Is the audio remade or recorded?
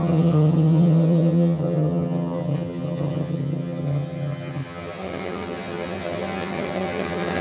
remade